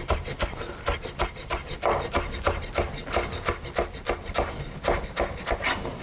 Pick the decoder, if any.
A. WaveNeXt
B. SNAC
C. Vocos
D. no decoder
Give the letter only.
D